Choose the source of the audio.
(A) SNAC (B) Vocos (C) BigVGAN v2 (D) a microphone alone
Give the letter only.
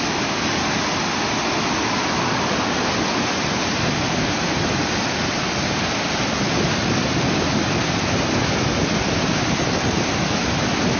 D